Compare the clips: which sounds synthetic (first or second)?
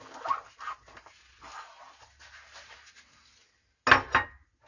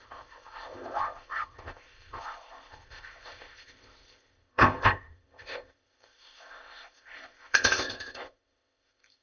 second